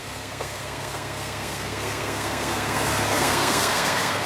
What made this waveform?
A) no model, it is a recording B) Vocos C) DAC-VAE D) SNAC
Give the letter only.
D